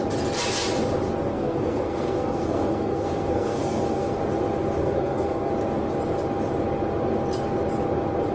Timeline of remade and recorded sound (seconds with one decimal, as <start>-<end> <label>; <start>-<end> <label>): 0.0-1.3 recorded; 1.3-4.2 remade; 4.2-4.8 recorded; 4.8-5.5 remade; 5.5-8.3 recorded